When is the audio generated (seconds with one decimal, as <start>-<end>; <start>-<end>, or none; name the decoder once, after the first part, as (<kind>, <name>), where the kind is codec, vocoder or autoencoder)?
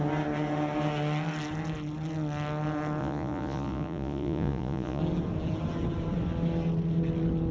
3.0-5.0 (vocoder, Vocos)